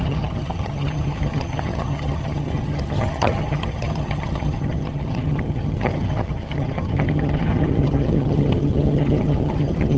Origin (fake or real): fake